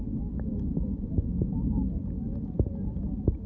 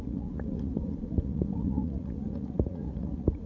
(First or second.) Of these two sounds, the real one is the first